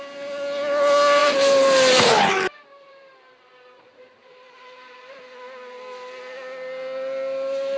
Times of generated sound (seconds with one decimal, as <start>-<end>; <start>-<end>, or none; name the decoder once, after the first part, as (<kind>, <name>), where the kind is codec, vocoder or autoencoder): 1.2-5.3 (vocoder, BigVGAN v2)